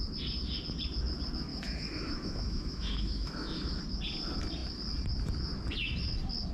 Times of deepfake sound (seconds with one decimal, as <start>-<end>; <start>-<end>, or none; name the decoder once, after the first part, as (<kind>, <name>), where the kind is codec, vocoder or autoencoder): 1.5-3.8 (autoencoder, DAC-VAE)